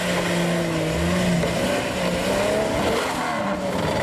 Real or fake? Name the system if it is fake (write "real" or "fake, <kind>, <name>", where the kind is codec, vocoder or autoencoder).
real